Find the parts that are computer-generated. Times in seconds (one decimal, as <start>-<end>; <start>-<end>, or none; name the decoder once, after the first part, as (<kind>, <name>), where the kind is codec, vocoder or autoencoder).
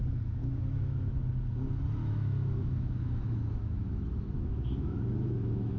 0.4-1.2 (autoencoder, DAC-VAE); 2.0-5.8